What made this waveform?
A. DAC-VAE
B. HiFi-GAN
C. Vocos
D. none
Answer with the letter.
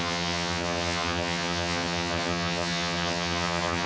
B